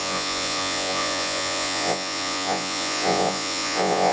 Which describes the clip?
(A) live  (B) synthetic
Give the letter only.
B